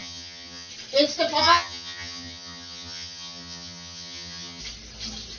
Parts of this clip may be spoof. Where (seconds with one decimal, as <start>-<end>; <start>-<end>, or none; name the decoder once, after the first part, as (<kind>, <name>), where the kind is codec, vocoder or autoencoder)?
0.0-0.7 (vocoder, HiFi-GAN); 1.4-4.6